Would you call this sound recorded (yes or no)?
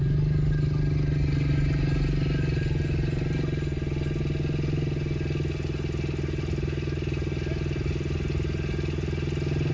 yes